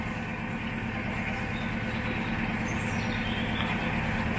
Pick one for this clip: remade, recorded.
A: recorded